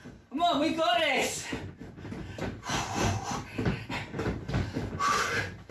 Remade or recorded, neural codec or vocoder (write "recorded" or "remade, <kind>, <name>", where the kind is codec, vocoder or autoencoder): recorded